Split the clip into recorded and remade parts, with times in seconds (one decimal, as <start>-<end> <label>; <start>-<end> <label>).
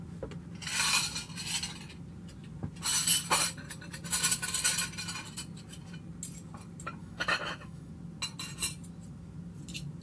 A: 0.0-7.0 recorded; 7.0-7.9 remade; 7.9-10.0 recorded